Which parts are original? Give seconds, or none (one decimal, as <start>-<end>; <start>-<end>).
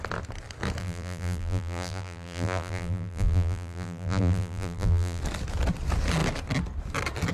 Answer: 0.0-0.8; 5.2-7.3